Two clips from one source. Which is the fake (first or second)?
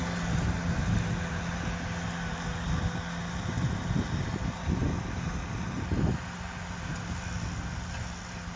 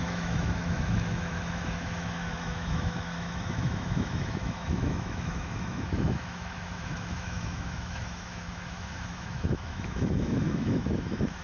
second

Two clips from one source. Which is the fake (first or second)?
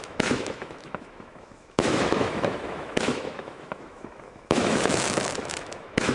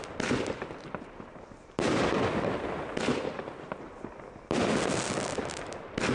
first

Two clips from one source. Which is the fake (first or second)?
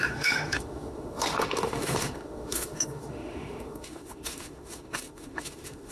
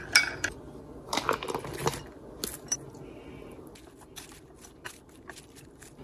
first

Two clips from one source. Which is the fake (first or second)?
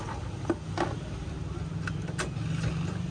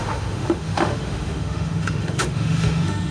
second